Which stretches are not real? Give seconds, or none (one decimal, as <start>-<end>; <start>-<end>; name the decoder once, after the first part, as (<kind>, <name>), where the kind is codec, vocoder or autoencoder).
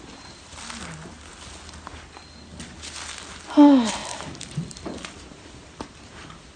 4.0-6.6 (vocoder, BigVGAN v2)